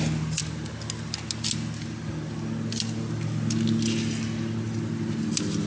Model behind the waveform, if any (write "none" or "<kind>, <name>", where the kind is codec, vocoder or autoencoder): none